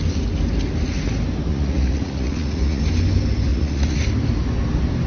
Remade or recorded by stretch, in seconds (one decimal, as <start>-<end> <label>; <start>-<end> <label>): 0.0-1.5 recorded; 1.5-2.8 remade; 2.8-3.5 recorded; 3.5-4.0 remade; 4.0-5.1 recorded

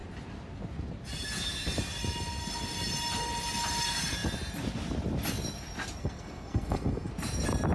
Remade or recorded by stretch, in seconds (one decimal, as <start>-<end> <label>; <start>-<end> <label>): 0.0-6.0 recorded; 6.0-7.1 remade; 7.1-7.7 recorded

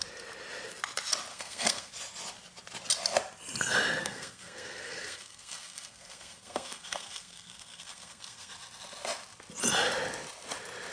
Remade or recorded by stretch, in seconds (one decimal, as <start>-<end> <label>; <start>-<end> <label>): 0.0-1.3 recorded; 1.3-1.9 remade; 1.9-4.0 recorded; 4.0-8.5 remade; 8.5-10.9 recorded

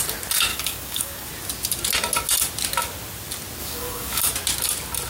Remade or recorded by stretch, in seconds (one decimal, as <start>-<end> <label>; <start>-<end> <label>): 0.0-0.5 recorded; 0.5-1.3 remade; 1.3-3.6 recorded; 3.6-4.2 remade; 4.2-5.1 recorded

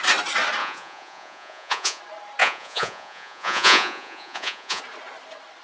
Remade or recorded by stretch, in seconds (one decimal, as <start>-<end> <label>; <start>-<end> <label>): 0.0-0.6 recorded; 0.6-2.0 remade; 2.0-2.4 recorded; 2.4-4.8 remade; 4.8-5.6 recorded

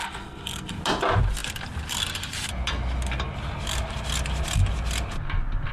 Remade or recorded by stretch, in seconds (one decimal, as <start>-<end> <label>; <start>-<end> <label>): 0.0-0.8 remade; 0.8-5.7 recorded

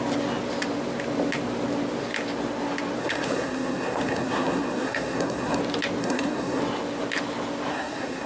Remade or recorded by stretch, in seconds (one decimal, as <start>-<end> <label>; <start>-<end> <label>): 0.0-3.0 recorded; 3.0-5.6 remade; 5.6-6.0 recorded; 6.0-6.6 remade; 6.6-7.7 recorded; 7.7-8.3 remade